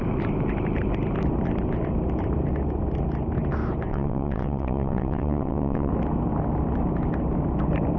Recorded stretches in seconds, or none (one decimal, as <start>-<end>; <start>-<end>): 0.0-3.9; 5.9-8.0